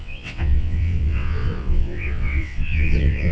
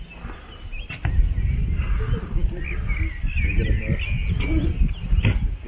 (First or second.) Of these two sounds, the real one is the second